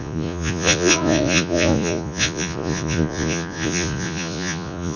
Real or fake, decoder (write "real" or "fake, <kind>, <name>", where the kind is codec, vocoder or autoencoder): fake, vocoder, Vocos